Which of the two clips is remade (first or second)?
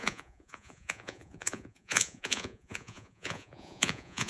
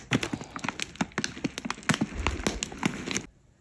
first